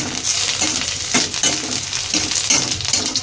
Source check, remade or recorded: recorded